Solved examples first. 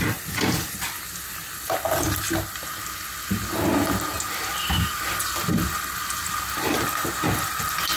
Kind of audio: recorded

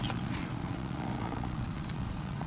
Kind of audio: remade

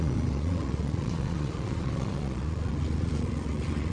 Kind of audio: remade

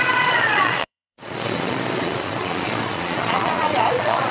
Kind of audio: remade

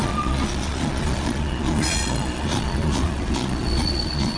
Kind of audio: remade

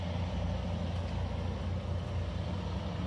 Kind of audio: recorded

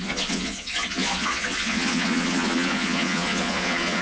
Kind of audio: remade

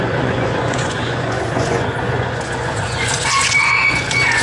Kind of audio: remade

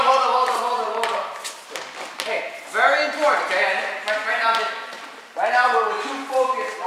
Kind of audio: recorded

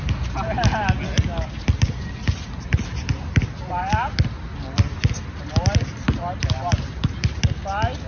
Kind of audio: recorded